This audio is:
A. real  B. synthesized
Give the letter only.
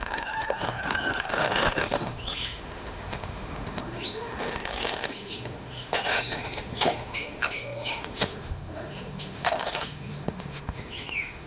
B